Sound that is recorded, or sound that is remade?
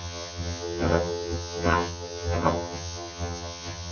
remade